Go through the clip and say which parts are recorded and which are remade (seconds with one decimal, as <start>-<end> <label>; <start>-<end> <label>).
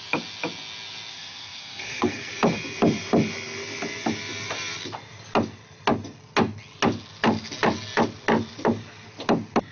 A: 0.0-1.1 recorded; 1.1-2.3 remade; 2.3-9.7 recorded